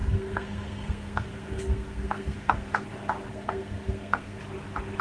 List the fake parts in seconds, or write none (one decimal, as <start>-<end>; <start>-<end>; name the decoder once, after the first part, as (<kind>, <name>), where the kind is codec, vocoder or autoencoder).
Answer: 0.0-2.9 (codec, SNAC); 3.3-4.4